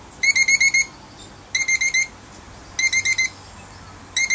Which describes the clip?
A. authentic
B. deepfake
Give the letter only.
A